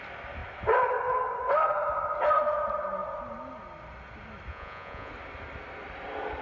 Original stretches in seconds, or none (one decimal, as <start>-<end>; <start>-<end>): 0.0-4.5; 5.1-6.4